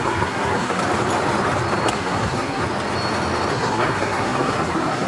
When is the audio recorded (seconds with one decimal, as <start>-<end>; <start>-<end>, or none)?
0.8-1.9; 2.6-3.5